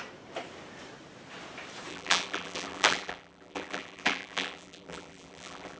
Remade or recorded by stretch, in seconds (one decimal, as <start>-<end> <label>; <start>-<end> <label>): 0.0-1.9 recorded; 1.9-5.8 remade